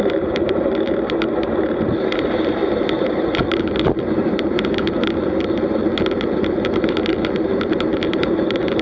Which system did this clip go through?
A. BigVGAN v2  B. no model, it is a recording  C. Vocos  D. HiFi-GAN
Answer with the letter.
A